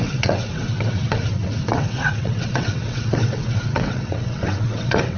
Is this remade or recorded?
remade